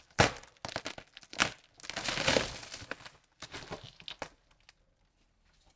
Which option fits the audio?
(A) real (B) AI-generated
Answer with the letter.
A